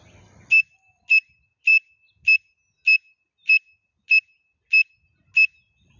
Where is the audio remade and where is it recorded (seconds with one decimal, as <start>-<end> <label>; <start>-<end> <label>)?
0.0-6.0 recorded

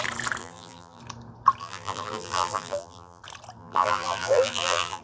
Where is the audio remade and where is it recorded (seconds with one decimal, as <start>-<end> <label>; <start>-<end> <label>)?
0.0-0.4 recorded; 0.4-1.0 remade; 1.0-1.6 recorded; 1.6-3.2 remade; 3.2-3.6 recorded; 3.6-5.0 remade

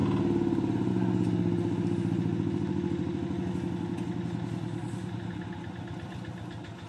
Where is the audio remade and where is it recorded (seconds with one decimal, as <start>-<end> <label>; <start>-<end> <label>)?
0.0-6.9 recorded

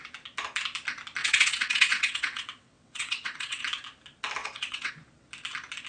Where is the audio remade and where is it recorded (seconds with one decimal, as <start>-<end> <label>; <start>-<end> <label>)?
0.0-1.2 recorded; 1.2-3.6 remade; 3.6-4.4 recorded; 4.4-4.9 remade; 4.9-5.9 recorded

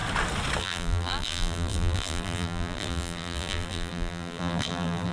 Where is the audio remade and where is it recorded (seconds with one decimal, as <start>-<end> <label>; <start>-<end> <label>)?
0.0-0.6 recorded; 0.6-5.1 remade

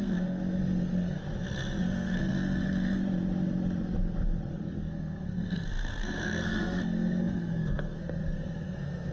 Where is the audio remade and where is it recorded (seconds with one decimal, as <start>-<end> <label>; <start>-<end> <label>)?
0.0-1.2 remade; 1.2-1.8 recorded; 1.8-3.0 remade; 3.0-4.5 recorded; 4.5-9.1 remade